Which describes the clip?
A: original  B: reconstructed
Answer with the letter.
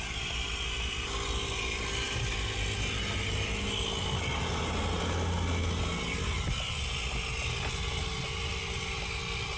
A